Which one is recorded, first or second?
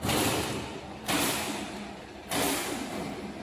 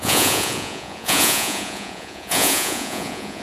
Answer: first